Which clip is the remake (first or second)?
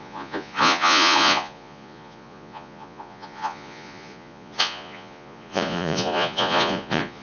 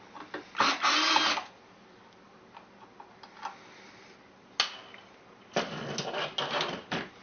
first